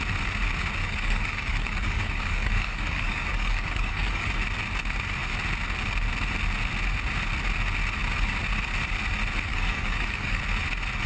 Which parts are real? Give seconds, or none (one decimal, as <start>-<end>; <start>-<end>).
0.0-0.8; 4.3-9.5; 10.4-11.1

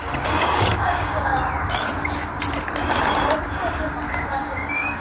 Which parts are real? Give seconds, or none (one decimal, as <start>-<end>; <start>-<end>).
1.3-4.3

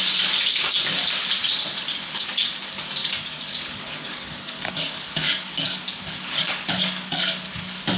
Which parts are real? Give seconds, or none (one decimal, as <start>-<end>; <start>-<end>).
0.0-1.9; 2.5-3.0; 7.6-8.0

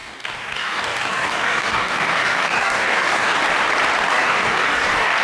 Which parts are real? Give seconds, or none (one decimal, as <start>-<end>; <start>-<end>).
3.4-4.1

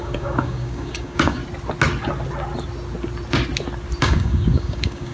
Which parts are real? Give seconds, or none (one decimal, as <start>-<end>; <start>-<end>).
1.4-4.0

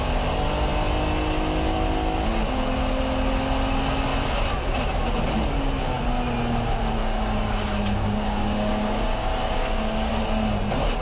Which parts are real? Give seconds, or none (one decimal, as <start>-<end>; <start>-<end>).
0.0-7.0; 10.1-11.0

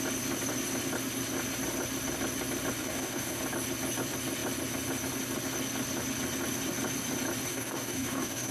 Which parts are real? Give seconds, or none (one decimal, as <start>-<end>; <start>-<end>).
0.0-2.8; 3.4-7.5

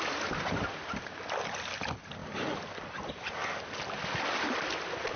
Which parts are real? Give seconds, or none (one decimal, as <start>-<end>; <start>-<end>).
0.0-5.2